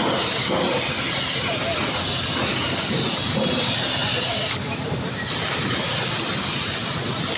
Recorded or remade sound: recorded